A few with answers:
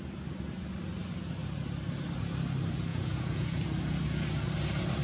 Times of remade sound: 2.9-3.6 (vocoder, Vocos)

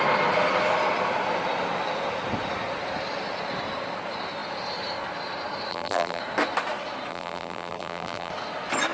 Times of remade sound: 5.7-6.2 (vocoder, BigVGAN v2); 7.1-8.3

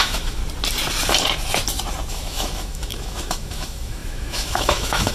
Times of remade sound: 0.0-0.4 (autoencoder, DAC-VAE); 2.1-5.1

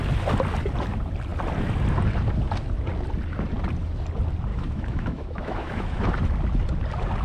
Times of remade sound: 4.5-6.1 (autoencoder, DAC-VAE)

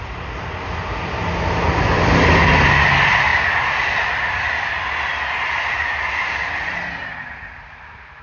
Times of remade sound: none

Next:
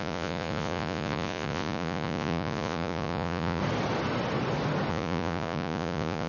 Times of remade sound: 0.0-3.6 (vocoder, Vocos); 4.9-6.3

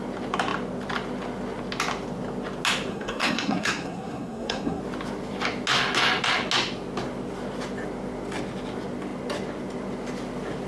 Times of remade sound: 2.9-4.8 (codec, SNAC)